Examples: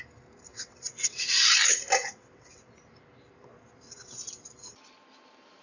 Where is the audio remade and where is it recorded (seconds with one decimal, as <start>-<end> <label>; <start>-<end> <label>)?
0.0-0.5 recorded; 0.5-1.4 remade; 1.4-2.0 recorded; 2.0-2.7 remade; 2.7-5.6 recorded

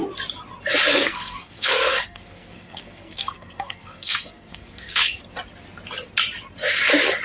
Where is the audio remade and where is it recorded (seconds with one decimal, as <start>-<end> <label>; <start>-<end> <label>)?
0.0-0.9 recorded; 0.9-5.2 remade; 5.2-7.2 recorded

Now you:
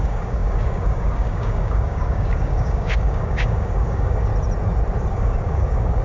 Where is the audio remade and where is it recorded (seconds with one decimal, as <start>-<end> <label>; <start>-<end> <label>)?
0.0-4.3 remade; 4.3-5.1 recorded; 5.1-6.0 remade